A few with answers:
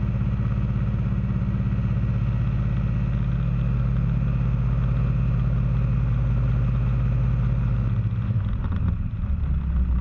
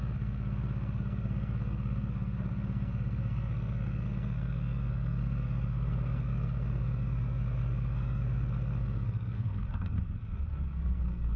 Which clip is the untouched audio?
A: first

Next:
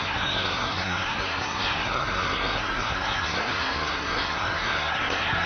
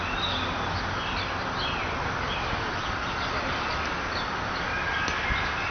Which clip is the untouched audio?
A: second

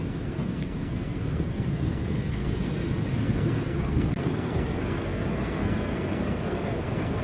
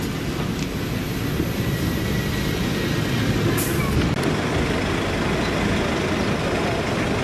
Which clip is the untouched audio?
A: second